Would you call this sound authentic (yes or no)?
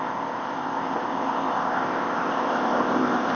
no